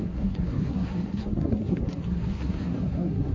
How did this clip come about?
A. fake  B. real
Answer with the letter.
A